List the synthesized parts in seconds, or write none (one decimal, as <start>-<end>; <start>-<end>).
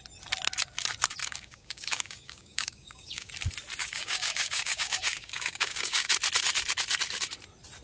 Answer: 1.2-3.3; 3.8-6.1